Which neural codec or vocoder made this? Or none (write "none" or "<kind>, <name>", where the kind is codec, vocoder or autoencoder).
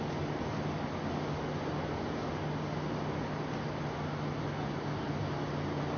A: none